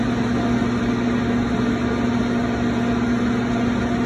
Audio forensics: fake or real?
real